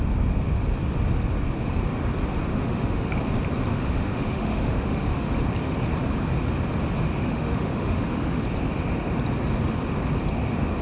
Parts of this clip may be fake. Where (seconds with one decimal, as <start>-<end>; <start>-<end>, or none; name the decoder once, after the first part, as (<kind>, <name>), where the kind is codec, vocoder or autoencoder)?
2.5-3.1 (autoencoder, DAC-VAE); 3.7-5.3; 7.1-8.4